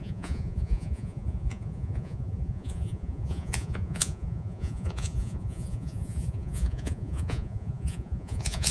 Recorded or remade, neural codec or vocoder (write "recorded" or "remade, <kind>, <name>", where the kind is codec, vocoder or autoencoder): remade, vocoder, Vocos